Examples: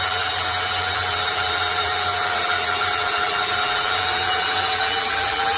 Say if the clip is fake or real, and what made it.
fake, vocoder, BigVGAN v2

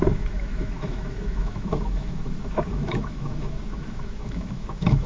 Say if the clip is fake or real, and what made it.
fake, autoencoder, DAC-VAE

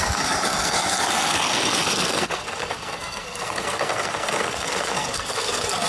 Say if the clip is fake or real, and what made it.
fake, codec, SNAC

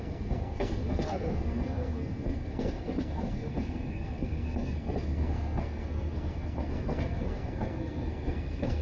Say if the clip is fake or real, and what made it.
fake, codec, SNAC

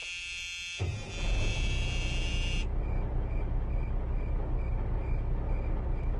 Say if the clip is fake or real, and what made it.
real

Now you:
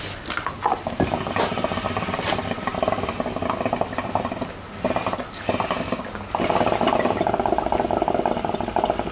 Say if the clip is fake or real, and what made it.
real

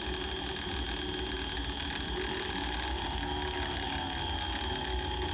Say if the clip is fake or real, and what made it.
real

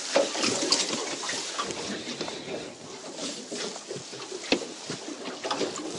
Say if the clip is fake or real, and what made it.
real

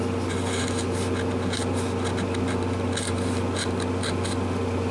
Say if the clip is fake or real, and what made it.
real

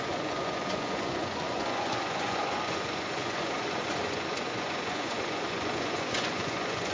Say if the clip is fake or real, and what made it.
fake, vocoder, Vocos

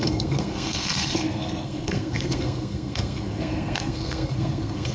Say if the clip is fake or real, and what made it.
fake, codec, SNAC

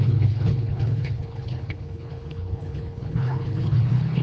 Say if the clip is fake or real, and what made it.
fake, codec, HILCodec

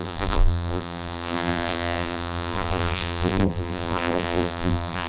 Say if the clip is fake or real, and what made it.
fake, vocoder, BigVGAN v2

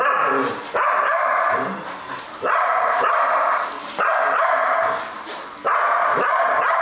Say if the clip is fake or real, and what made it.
fake, vocoder, BigVGAN v2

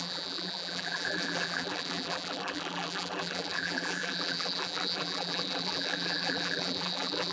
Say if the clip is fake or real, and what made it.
fake, vocoder, BigVGAN v2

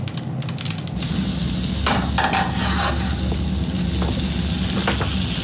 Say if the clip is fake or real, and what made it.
real